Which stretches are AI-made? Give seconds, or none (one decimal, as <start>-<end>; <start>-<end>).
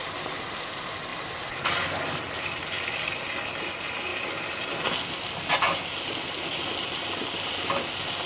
none